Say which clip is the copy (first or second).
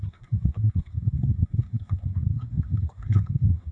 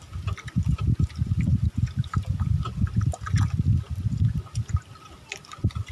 first